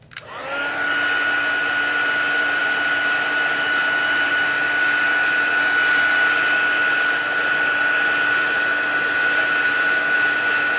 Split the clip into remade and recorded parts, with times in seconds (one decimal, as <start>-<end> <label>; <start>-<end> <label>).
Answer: 0.0-10.8 recorded